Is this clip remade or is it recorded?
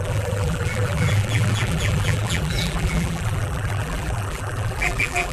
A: remade